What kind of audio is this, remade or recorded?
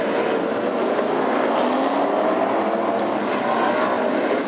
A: recorded